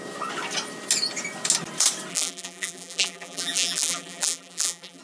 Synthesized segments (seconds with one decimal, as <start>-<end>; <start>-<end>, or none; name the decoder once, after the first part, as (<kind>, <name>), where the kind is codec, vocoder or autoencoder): 2.1-5.0 (vocoder, BigVGAN v2)